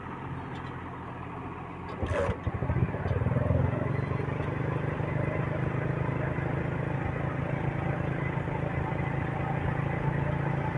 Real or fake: real